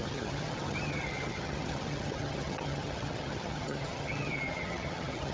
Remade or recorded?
remade